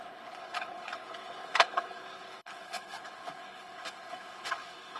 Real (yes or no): no